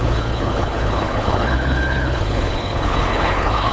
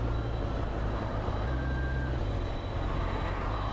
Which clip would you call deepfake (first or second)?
first